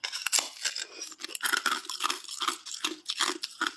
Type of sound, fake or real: real